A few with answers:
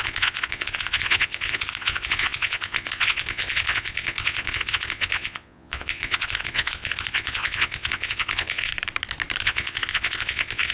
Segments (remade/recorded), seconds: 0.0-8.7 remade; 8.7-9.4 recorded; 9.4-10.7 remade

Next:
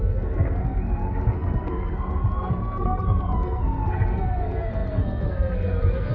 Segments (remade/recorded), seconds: 0.0-6.1 remade

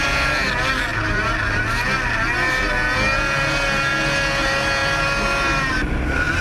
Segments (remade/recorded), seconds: 0.0-6.4 recorded

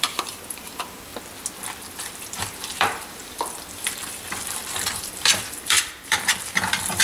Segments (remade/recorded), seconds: 0.0-1.1 remade; 1.1-1.9 recorded; 1.9-7.0 remade